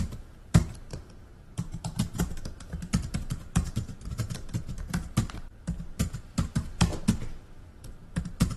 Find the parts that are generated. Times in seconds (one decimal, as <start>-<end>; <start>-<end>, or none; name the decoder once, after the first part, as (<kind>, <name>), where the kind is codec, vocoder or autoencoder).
0.0-6.9 (vocoder, BigVGAN v2); 8.2-8.6

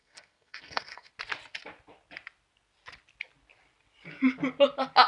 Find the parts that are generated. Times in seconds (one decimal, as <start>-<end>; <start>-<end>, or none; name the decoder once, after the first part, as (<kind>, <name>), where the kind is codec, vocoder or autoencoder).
0.0-1.1 (codec, SNAC)

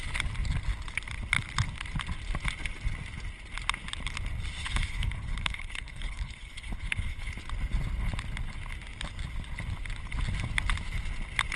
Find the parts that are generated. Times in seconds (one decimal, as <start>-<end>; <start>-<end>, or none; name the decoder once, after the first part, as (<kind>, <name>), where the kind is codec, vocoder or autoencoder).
4.6-7.3 (codec, HILCodec)

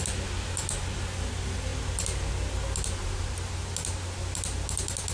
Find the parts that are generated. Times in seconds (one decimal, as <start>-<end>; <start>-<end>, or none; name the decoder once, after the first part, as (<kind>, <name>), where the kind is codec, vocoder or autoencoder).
none

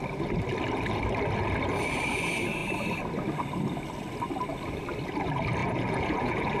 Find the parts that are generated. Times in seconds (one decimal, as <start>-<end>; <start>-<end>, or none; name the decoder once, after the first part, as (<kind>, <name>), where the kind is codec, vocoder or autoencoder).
5.6-6.6 (vocoder, Vocos)

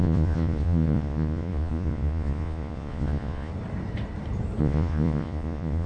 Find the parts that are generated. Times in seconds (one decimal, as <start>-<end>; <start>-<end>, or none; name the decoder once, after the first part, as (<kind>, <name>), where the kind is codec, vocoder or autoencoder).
0.0-3.5 (vocoder, Vocos); 4.6-5.9

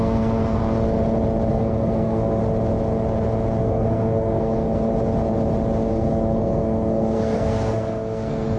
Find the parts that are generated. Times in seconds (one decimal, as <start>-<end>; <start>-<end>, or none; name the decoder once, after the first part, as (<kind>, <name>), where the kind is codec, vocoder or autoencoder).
0.0-0.6 (codec, SNAC); 1.5-2.4; 3.6-4.9; 5.9-8.6

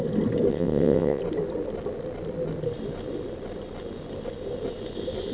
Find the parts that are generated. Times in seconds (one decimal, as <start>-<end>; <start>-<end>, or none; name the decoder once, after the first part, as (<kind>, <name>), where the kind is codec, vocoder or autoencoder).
0.5-1.2 (vocoder, WaveNeXt)